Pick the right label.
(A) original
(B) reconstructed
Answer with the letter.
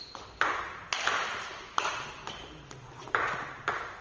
A